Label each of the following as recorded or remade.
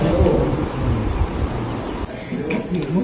recorded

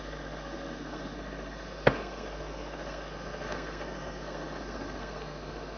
remade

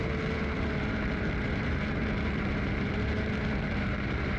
remade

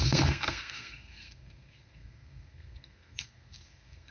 remade